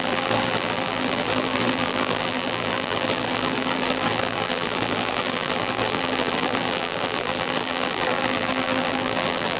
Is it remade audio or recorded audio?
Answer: remade